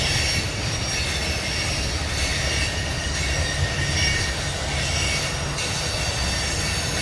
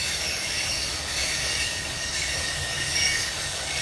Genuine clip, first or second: first